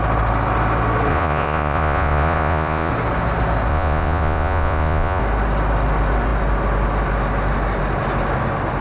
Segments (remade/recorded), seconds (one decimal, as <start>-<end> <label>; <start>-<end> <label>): 0.0-1.1 recorded; 1.1-2.9 remade; 2.9-3.7 recorded; 3.7-5.2 remade; 5.2-8.8 recorded